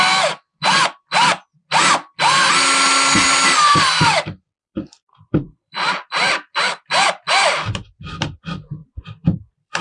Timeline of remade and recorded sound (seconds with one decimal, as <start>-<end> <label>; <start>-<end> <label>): 0.0-4.6 recorded; 4.6-5.9 remade; 5.9-8.8 recorded; 8.8-9.8 remade